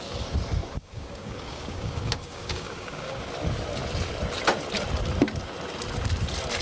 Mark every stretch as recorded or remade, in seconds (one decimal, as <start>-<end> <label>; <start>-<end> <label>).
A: 0.0-0.6 recorded; 0.6-3.3 remade; 3.3-6.6 recorded